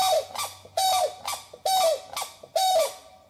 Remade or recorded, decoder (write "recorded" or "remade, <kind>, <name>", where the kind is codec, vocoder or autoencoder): recorded